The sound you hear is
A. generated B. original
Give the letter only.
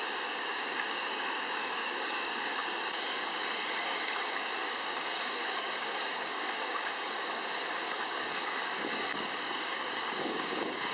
A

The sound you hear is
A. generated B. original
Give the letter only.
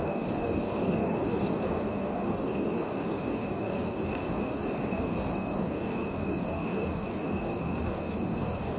A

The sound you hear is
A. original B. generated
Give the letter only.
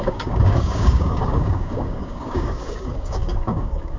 B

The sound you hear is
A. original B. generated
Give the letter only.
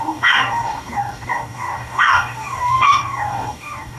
B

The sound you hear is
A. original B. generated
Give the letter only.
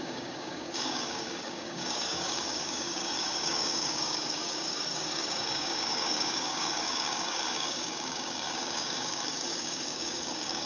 B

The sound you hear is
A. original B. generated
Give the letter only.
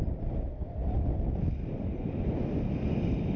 A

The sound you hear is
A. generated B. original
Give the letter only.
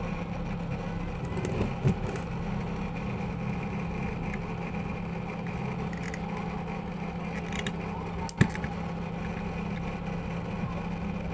B